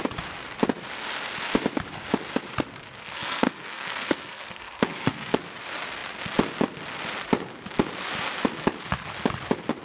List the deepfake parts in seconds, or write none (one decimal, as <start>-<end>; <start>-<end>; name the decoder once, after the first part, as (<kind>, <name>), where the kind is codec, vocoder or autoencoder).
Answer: 3.0-5.4 (codec, SNAC)